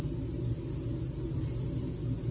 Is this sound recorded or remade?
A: recorded